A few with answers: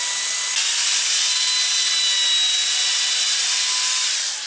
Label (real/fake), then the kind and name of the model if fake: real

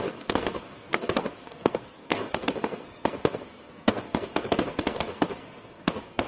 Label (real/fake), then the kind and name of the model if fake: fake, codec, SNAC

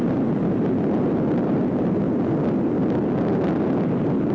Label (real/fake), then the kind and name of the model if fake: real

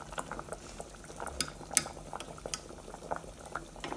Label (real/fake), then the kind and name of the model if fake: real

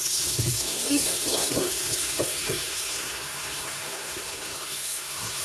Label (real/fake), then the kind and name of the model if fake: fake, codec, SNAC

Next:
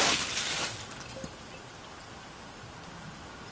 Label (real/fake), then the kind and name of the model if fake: real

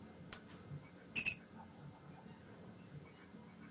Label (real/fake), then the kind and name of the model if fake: real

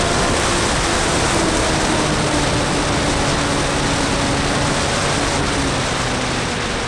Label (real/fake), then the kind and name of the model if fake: real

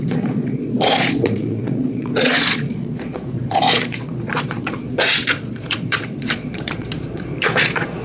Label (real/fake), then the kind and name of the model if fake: fake, vocoder, Vocos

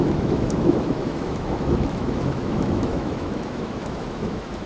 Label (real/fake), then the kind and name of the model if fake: fake, autoencoder, DAC-VAE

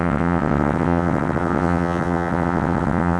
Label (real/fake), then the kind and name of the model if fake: fake, vocoder, WaveNeXt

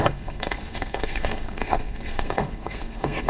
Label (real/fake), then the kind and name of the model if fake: fake, codec, SNAC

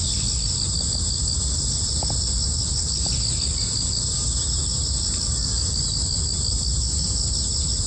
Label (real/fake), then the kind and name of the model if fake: real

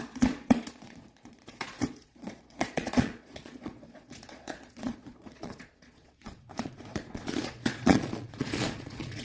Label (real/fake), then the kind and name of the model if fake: fake, vocoder, Vocos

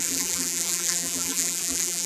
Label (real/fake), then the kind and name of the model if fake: fake, vocoder, BigVGAN v2